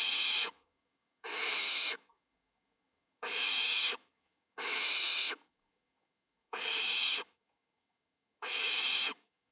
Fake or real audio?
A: fake